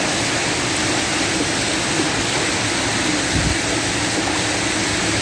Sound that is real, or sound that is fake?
real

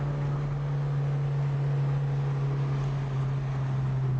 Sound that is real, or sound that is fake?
real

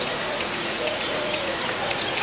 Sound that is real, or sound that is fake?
fake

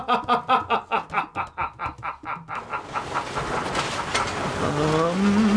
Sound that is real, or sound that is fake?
real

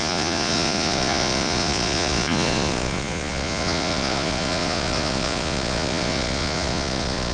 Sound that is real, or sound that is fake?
fake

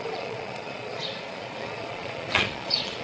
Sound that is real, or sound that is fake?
fake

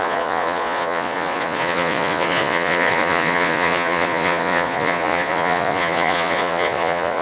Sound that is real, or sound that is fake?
fake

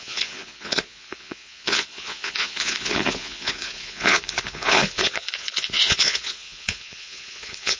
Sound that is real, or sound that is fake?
fake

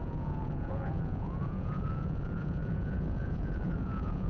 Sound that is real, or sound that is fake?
fake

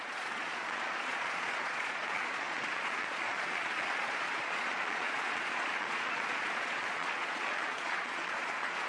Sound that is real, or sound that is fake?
fake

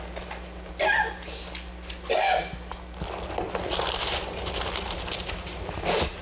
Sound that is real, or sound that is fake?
real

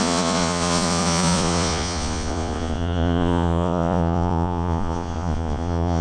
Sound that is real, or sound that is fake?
fake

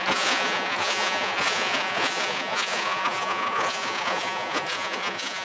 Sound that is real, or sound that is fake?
fake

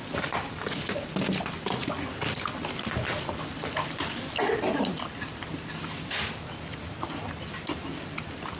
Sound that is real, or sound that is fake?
real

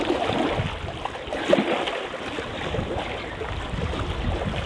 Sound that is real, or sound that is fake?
real